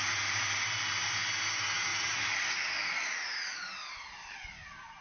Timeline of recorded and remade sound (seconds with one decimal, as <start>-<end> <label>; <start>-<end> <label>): 0.0-5.0 recorded